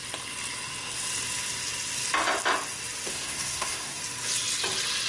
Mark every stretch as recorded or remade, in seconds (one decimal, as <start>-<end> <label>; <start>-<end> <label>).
0.0-3.1 recorded; 3.1-4.0 remade; 4.0-5.1 recorded